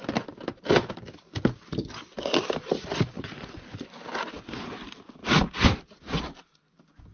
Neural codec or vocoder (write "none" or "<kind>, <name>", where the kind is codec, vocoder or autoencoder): none